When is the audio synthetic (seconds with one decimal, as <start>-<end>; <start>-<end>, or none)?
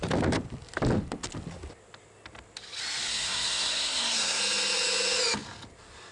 3.1-4.4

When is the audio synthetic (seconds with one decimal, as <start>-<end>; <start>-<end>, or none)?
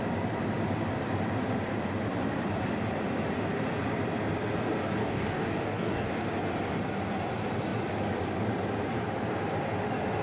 5.0-6.1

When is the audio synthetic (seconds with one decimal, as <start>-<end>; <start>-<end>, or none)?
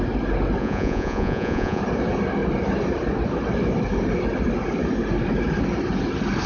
0.6-1.8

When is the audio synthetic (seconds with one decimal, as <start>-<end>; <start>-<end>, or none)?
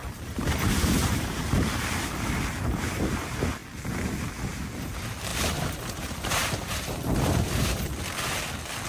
0.0-1.4; 5.3-8.0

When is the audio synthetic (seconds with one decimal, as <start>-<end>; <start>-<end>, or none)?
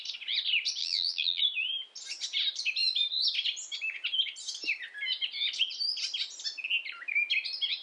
0.8-1.4